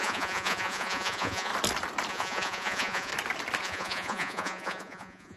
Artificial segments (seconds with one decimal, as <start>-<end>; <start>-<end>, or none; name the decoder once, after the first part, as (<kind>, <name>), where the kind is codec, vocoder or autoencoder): 0.0-1.5 (vocoder, Vocos); 2.1-3.1; 3.6-5.4